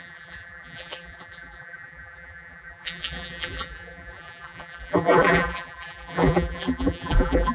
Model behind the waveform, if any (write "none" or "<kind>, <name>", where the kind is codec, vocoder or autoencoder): vocoder, BigVGAN v2